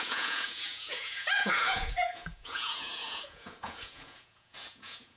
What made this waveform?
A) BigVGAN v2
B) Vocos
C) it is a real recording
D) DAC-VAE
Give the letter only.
B